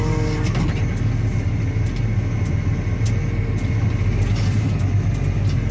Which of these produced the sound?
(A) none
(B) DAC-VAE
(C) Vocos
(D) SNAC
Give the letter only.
A